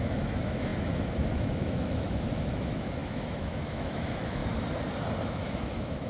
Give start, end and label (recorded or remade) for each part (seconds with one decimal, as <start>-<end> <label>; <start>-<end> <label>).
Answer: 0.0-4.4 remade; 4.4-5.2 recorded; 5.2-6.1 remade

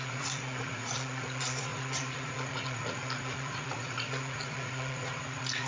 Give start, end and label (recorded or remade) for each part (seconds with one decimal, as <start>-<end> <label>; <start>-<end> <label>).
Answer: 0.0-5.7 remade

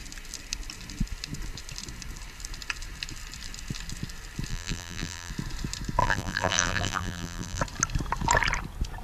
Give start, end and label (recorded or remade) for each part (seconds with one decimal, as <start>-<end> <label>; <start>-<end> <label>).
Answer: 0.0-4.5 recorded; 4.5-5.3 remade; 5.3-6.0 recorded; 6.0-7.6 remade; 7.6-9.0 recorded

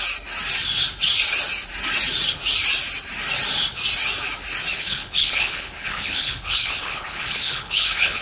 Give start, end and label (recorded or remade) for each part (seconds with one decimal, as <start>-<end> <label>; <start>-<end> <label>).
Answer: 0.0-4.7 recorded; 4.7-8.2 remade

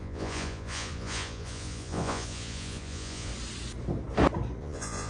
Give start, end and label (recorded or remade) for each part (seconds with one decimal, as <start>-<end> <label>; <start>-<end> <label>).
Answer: 0.0-3.3 remade; 3.3-4.6 recorded; 4.6-5.1 remade